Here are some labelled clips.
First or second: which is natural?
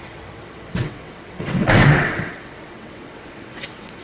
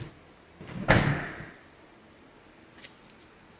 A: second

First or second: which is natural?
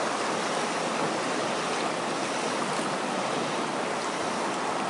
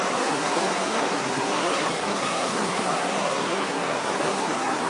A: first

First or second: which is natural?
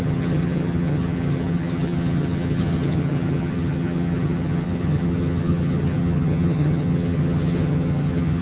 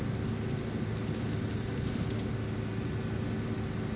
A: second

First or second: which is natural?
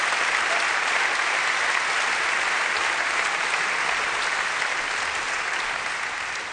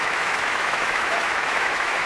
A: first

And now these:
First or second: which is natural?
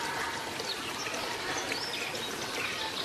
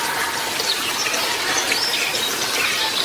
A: first